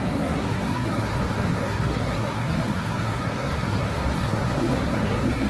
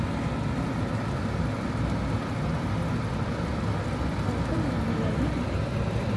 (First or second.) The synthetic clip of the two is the first